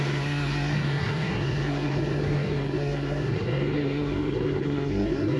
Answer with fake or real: fake